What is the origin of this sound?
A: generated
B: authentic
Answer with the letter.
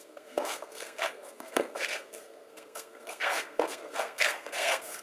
A